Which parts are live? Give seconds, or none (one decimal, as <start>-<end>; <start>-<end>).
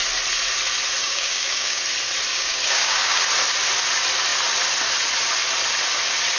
0.0-1.0; 1.8-2.3; 3.2-6.4